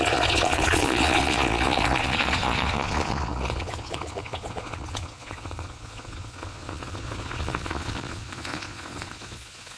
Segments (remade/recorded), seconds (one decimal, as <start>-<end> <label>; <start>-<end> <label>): 0.0-9.8 remade